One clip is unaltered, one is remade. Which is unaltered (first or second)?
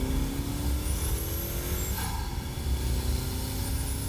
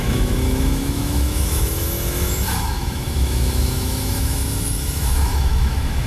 first